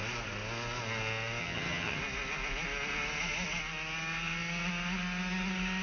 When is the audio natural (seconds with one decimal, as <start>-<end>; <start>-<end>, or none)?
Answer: 0.0-1.4; 2.0-5.8